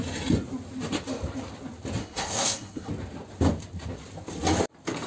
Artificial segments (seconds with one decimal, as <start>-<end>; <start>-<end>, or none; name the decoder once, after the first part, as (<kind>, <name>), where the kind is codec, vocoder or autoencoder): 2.0-2.9 (codec, SNAC)

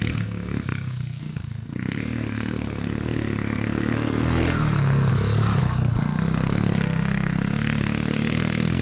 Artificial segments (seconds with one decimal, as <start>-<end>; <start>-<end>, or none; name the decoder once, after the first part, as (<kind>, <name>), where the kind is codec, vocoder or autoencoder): 0.0-5.1 (codec, SNAC); 5.6-8.8